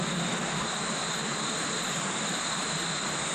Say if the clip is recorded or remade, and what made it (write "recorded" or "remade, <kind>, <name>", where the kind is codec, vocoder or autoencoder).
recorded